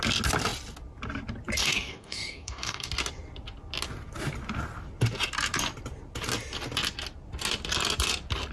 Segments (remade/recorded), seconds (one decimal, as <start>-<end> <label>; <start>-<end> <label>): 0.0-1.6 recorded; 1.6-2.9 remade; 2.9-8.5 recorded